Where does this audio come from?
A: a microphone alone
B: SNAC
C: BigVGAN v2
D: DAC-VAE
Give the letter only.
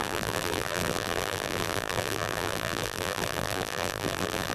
C